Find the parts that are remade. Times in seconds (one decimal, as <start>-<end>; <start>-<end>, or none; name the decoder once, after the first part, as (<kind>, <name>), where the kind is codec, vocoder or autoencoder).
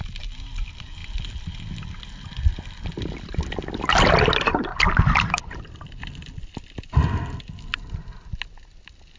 none